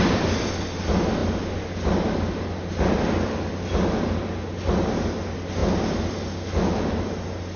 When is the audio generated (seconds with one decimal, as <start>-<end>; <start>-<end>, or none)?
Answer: none